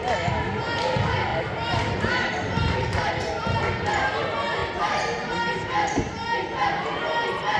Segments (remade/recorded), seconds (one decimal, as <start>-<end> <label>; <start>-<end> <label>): 0.0-1.3 recorded; 1.3-3.1 remade; 3.1-4.6 recorded; 4.6-5.9 remade; 5.9-7.6 recorded

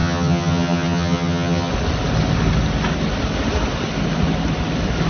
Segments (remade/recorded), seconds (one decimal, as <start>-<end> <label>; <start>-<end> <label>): 0.0-1.7 remade; 1.7-5.1 recorded

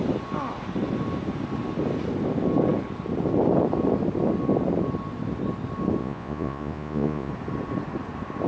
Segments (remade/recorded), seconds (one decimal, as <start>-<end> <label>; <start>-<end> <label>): 0.0-6.0 recorded; 6.0-7.3 remade; 7.3-8.5 recorded

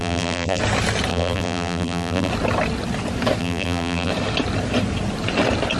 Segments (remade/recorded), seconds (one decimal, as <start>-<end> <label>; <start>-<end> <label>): 0.0-0.6 remade; 0.6-1.1 recorded; 1.1-2.3 remade; 2.3-3.4 recorded; 3.4-4.1 remade; 4.1-5.8 recorded

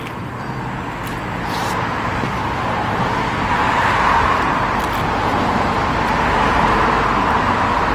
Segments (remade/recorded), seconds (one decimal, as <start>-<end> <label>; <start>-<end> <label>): 0.0-1.6 recorded; 1.6-4.8 remade; 4.8-5.3 recorded; 5.3-7.9 remade

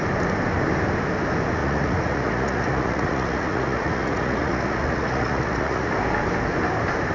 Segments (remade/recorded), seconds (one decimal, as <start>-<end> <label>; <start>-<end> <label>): 0.0-1.6 recorded; 1.6-5.9 remade; 5.9-7.1 recorded

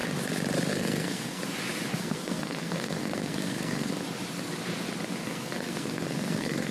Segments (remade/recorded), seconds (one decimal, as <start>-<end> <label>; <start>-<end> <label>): 0.0-0.7 recorded; 0.7-1.4 remade; 1.4-2.0 recorded; 2.0-3.9 remade; 3.9-5.2 recorded; 5.2-6.7 remade